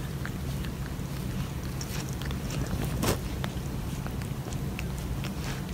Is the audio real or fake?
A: real